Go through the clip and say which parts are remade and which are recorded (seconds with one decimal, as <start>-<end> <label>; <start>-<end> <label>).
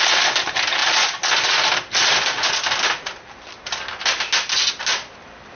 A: 0.0-5.6 recorded